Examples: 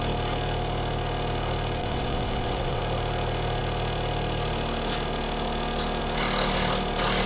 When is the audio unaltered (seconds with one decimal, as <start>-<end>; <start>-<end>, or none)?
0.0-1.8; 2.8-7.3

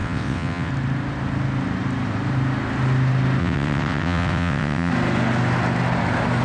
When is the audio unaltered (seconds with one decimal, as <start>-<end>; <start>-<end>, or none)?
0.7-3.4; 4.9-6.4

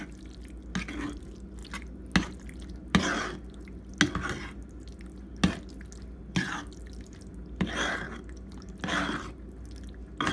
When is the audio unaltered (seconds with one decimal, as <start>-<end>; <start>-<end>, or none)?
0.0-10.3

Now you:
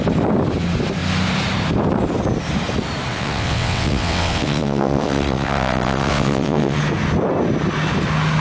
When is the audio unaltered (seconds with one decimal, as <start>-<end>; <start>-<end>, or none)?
0.0-3.1; 6.8-8.4

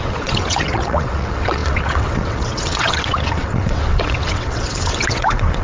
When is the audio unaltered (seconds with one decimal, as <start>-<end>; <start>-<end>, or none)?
none

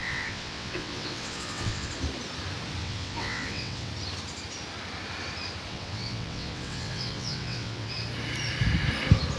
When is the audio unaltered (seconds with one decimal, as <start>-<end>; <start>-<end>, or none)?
1.9-2.8; 3.9-5.7; 7.9-9.4

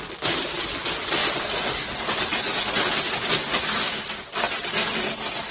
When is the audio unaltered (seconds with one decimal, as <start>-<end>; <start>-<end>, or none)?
0.0-5.5

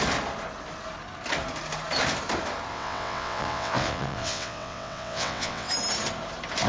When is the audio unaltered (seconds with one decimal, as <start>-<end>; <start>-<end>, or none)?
0.0-2.7; 5.7-6.7